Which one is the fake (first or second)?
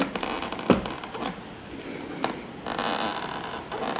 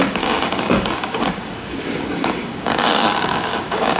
second